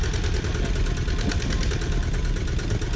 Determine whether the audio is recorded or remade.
recorded